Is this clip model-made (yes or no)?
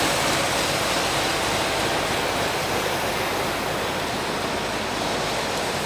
no